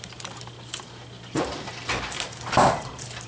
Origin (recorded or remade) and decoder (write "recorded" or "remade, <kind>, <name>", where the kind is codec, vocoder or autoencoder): recorded